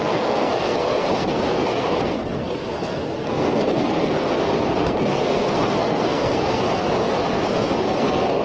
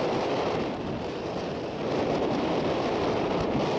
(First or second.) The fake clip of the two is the first